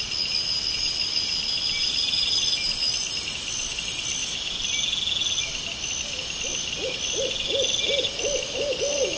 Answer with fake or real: real